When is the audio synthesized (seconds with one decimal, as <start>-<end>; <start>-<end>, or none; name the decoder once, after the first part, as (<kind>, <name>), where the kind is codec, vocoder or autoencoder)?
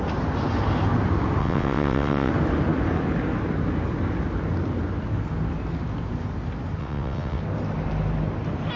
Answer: 1.4-2.3 (vocoder, WaveNeXt); 6.8-7.4